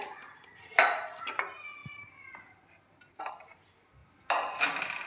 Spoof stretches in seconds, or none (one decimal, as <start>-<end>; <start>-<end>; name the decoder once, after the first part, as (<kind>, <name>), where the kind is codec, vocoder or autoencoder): none

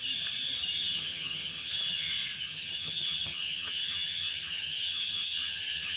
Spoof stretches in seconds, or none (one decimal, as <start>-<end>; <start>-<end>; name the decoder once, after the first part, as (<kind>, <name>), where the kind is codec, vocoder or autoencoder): 0.7-2.1 (vocoder, HiFi-GAN); 2.5-6.0

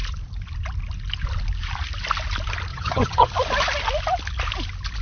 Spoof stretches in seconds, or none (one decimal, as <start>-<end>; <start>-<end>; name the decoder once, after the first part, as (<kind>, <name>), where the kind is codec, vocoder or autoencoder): 2.7-3.3 (vocoder, HiFi-GAN)

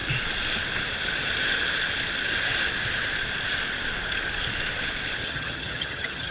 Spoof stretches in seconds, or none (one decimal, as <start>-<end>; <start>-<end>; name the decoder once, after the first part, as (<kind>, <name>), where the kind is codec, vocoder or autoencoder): 5.2-6.3 (vocoder, HiFi-GAN)

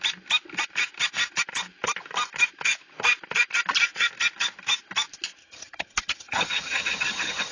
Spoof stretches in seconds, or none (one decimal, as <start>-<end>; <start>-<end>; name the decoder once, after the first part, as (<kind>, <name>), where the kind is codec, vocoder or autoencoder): 5.4-7.5 (vocoder, HiFi-GAN)

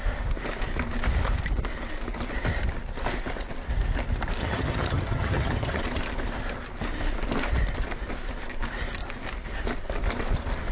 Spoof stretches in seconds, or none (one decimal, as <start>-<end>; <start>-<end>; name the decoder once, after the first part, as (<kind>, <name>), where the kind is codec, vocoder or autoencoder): 4.4-5.8 (vocoder, HiFi-GAN)